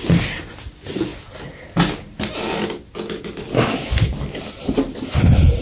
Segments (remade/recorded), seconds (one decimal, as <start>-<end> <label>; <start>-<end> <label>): 0.0-5.6 recorded